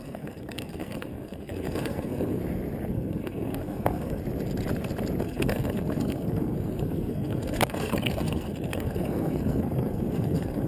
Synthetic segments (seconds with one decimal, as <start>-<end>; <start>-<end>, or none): 0.0-2.4; 2.9-4.2; 5.2-10.7